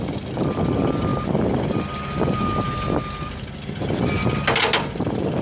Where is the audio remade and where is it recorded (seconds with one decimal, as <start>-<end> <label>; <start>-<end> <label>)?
0.0-5.4 recorded